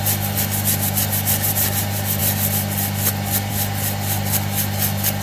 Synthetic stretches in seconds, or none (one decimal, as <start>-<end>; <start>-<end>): none